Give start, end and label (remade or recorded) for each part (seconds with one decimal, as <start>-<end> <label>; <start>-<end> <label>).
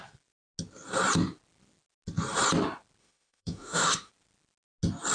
0.0-3.0 recorded; 3.0-4.1 remade; 4.1-5.1 recorded